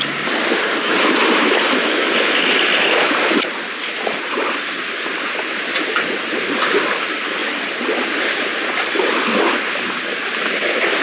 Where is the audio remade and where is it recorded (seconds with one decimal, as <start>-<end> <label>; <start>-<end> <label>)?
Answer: 0.0-11.0 recorded